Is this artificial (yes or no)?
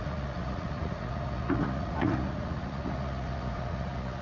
yes